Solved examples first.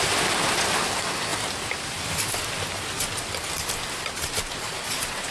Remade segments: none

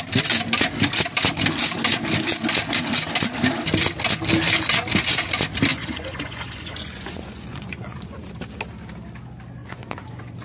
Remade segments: 5.7-8.3; 9.6-10.4

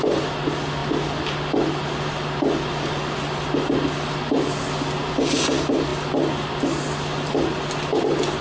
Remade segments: none

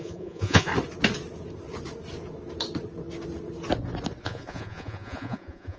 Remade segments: 0.0-0.7; 4.2-5.8

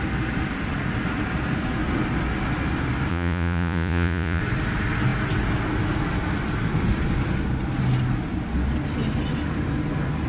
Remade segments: 3.1-4.4

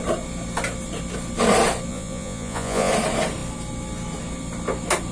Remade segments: 1.9-2.9

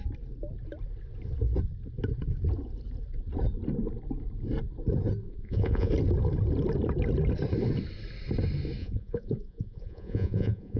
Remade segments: 5.2-5.9; 8.8-10.8